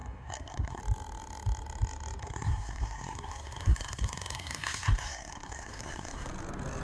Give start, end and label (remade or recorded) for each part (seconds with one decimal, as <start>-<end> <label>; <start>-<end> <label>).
0.0-0.8 remade; 0.8-2.2 recorded; 2.2-6.3 remade; 6.3-6.8 recorded